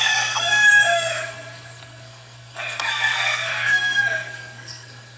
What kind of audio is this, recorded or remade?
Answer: remade